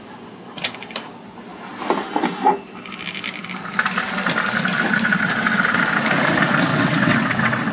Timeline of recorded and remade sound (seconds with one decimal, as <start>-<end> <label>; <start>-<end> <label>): 0.0-6.7 recorded; 6.7-7.7 remade